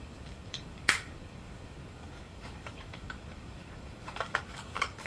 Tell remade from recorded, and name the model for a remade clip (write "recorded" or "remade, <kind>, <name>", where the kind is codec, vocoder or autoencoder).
remade, codec, DAC